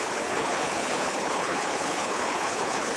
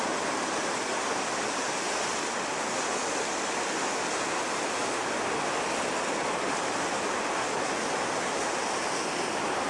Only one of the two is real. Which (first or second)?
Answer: second